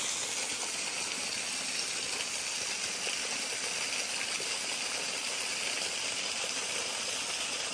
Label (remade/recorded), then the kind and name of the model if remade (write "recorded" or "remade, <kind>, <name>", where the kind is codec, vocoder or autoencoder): recorded